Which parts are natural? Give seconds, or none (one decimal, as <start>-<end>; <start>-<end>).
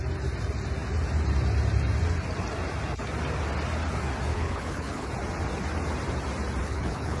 0.0-4.3; 5.1-6.6